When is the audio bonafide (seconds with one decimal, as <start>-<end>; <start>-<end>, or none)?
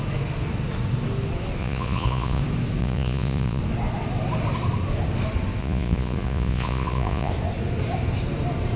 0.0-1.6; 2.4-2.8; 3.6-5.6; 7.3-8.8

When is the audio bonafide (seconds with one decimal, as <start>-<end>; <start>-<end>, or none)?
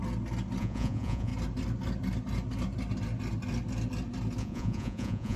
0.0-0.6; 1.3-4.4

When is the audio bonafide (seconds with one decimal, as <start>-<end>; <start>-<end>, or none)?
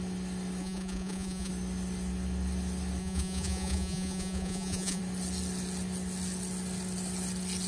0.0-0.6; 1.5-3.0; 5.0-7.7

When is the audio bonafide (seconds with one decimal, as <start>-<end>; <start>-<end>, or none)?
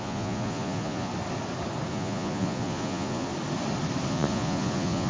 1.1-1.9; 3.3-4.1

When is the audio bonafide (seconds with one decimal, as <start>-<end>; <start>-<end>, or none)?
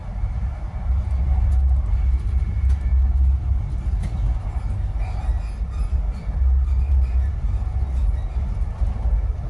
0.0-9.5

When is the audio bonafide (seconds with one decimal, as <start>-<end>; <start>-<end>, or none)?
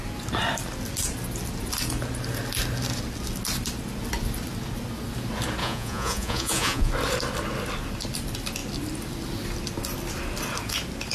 0.0-5.6; 6.9-11.1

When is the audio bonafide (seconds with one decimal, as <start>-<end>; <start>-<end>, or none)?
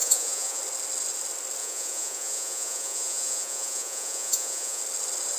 0.6-1.6; 4.8-5.4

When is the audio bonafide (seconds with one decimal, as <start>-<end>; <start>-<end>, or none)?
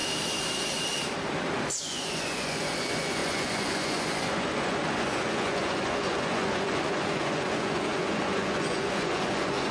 0.0-1.8